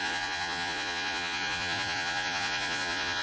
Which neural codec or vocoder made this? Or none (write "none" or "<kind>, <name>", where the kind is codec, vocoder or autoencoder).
vocoder, Vocos